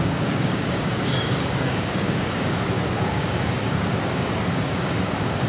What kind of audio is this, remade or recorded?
remade